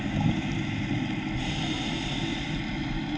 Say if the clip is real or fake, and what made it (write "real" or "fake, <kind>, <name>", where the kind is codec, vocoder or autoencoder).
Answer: real